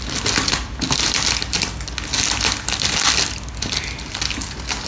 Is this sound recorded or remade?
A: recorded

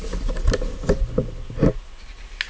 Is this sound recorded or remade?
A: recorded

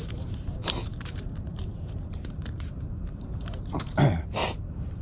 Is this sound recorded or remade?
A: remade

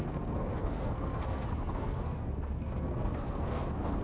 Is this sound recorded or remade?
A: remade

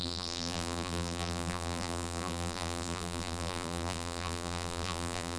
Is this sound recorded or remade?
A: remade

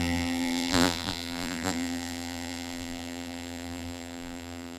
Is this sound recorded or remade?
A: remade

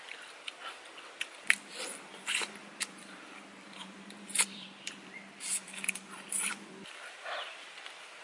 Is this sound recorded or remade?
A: remade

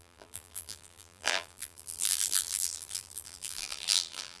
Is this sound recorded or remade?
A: remade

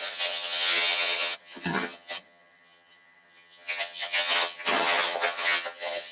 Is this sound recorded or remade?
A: remade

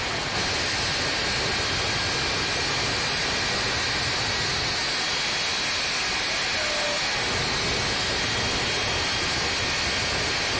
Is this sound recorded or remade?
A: recorded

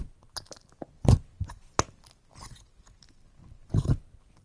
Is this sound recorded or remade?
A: recorded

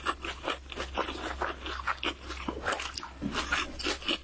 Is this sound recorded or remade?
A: recorded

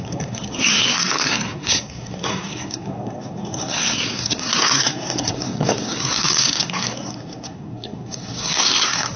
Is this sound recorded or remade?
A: remade